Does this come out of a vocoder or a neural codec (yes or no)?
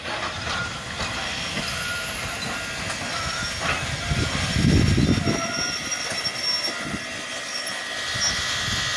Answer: no